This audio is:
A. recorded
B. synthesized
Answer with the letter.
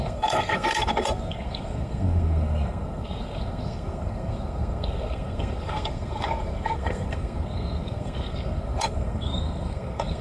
B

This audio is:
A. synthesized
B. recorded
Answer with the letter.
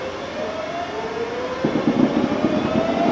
B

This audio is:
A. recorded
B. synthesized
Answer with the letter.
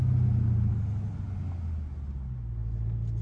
A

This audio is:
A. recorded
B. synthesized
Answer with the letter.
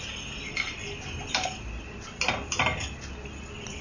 A